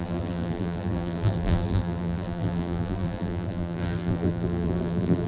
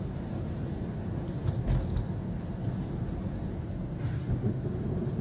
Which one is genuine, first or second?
second